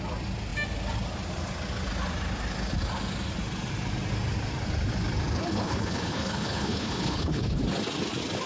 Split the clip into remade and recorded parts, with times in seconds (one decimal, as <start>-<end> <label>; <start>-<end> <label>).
0.0-5.5 recorded; 5.5-7.6 remade; 7.6-8.5 recorded